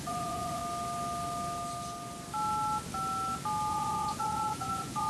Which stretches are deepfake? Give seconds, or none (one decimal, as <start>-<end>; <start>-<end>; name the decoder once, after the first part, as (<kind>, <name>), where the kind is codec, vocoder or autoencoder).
0.0-0.6 (vocoder, Vocos); 3.7-5.1